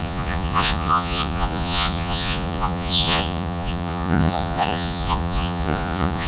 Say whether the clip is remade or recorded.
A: remade